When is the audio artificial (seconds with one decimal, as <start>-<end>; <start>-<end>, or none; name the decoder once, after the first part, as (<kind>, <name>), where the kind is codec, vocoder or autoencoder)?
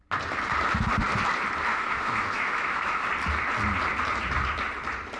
1.7-3.0 (autoencoder, DAC-VAE)